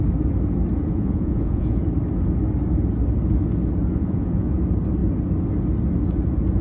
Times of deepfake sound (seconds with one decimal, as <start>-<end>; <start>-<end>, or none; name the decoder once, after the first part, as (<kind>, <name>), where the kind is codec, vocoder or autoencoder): 0.8-1.8 (vocoder, Vocos); 4.0-4.6